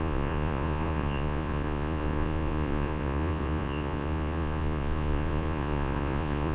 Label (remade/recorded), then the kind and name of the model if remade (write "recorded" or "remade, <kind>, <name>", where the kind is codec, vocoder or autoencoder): remade, vocoder, Vocos